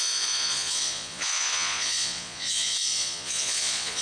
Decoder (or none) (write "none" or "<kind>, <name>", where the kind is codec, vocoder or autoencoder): vocoder, Vocos